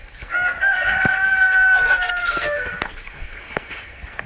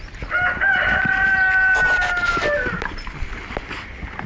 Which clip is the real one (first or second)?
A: second